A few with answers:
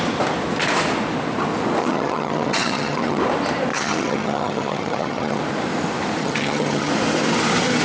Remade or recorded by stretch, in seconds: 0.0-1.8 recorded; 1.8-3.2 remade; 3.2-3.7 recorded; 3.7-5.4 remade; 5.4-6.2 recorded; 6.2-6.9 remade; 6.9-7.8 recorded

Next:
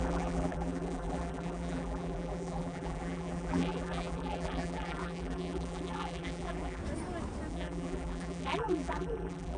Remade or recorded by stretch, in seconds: 0.0-6.8 remade; 6.8-7.5 recorded; 7.5-9.6 remade

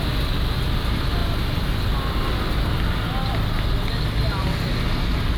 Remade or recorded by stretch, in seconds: 0.0-5.4 recorded

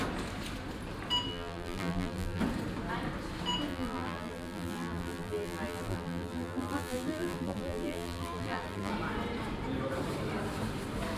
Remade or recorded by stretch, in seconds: 0.0-1.3 recorded; 1.3-2.4 remade; 2.4-3.7 recorded; 3.7-8.9 remade; 8.9-11.2 recorded

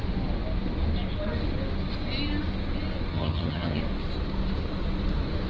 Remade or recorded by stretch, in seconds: 0.0-3.1 recorded; 3.1-3.8 remade; 3.8-5.5 recorded

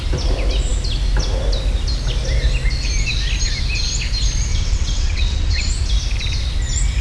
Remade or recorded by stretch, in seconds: 0.0-4.5 recorded; 4.5-5.7 remade; 5.7-7.0 recorded